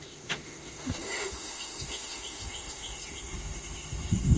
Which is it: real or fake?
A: fake